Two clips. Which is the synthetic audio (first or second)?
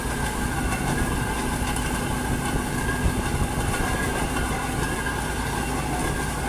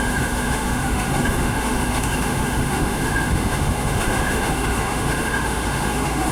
second